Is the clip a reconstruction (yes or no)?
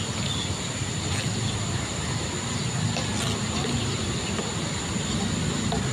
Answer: no